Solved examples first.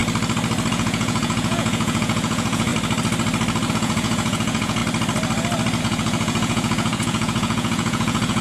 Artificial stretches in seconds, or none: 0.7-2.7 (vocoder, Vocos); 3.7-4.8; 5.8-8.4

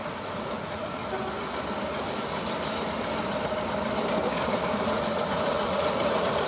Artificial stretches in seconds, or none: 0.0-1.0 (vocoder, Vocos); 4.8-6.5

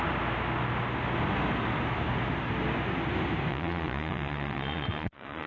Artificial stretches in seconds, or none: 3.5-5.5 (vocoder, Vocos)

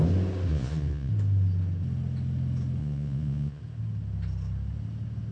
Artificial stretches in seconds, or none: 0.5-1.1 (vocoder, Vocos); 2.8-3.6

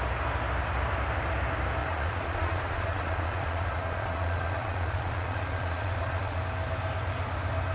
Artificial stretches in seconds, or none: 1.8-6.4 (vocoder, Vocos)